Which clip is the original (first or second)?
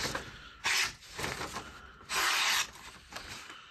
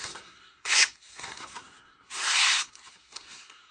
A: first